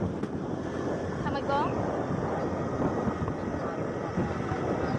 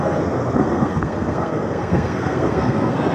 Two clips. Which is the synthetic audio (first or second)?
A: second